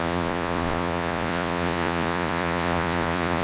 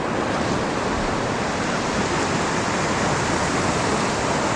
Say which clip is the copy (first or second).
first